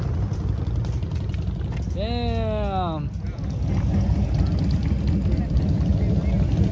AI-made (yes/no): no